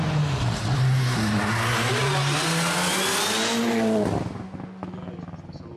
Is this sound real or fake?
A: real